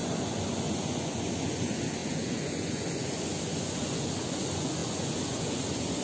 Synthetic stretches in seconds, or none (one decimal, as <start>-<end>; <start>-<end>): 0.0-6.0